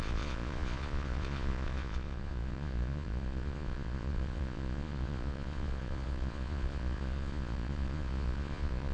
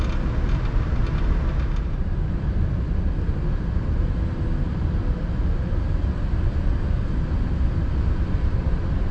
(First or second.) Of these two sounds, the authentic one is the second